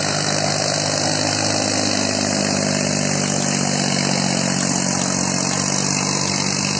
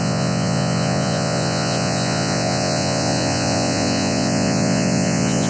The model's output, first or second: second